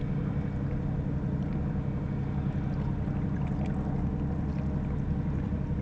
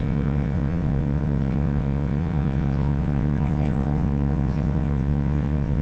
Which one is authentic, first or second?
first